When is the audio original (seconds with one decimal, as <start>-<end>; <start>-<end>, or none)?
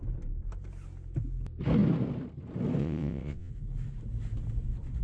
0.0-2.8; 3.5-5.0